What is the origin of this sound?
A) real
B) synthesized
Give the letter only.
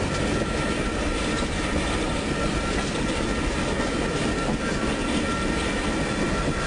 A